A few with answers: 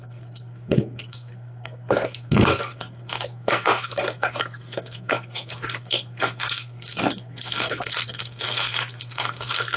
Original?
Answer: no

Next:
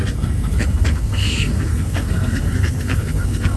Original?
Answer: no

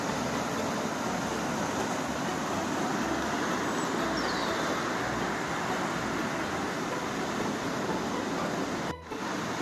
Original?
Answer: yes